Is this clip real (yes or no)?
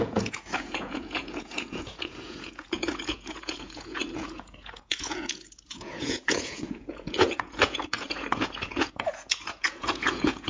no